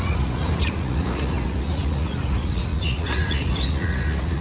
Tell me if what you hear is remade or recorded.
remade